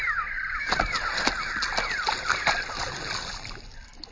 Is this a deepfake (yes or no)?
no